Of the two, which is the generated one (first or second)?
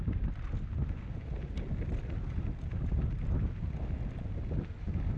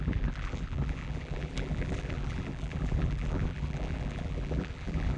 second